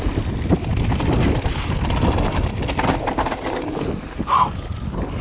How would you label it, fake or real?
real